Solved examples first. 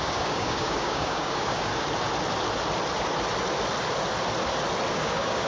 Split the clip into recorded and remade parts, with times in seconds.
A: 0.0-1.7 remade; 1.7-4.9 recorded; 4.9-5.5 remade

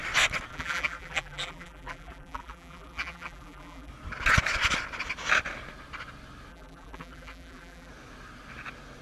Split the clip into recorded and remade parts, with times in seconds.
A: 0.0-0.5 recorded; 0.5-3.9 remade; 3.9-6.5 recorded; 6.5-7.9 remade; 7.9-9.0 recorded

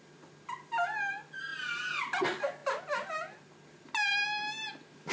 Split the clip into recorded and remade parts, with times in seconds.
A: 0.0-5.1 recorded

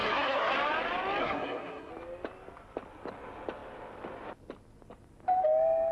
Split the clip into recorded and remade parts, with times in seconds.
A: 0.0-0.5 remade; 0.5-1.2 recorded; 1.2-1.9 remade; 1.9-5.9 recorded